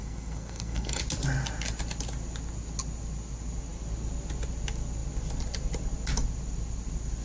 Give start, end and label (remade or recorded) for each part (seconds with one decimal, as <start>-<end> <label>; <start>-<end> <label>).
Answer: 0.0-1.0 remade; 1.0-7.2 recorded